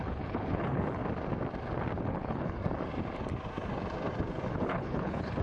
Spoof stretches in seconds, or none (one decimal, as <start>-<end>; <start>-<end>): 0.0-1.0; 2.0-2.6; 4.5-5.4